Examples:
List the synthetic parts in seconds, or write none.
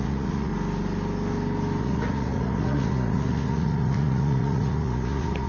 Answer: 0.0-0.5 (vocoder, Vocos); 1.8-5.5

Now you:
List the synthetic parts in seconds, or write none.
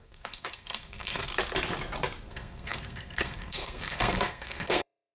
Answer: 0.0-1.3 (codec, SNAC); 2.3-5.1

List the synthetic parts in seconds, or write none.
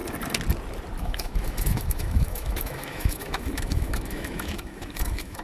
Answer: 1.0-5.4 (autoencoder, DAC-VAE)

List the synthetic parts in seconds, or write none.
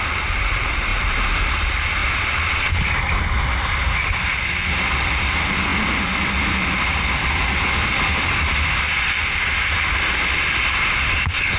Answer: none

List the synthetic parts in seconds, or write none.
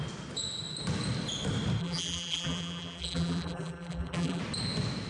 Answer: 1.8-4.4 (vocoder, BigVGAN v2)